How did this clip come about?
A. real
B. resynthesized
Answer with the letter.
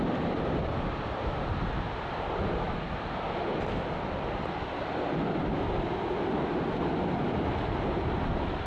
A